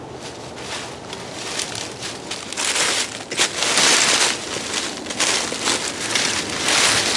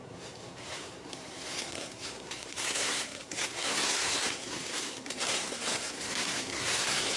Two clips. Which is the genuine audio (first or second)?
first